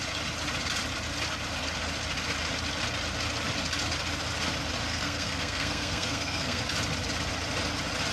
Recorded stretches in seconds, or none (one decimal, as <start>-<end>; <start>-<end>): 0.0-4.9; 6.6-8.1